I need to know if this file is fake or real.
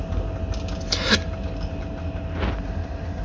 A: real